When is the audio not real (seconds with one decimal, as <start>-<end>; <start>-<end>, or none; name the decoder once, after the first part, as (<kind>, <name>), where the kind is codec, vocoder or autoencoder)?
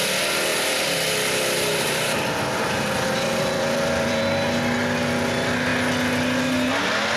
0.5-4.2 (vocoder, BigVGAN v2)